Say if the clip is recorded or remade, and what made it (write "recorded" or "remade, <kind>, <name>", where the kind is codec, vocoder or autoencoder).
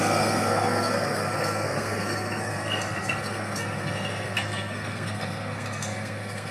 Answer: remade, codec, SNAC